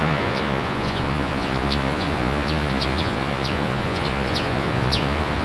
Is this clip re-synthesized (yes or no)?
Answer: yes